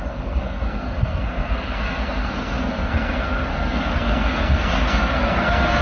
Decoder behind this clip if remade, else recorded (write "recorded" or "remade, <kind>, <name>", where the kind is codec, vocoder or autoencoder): remade, codec, SNAC